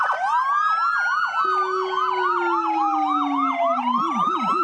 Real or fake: real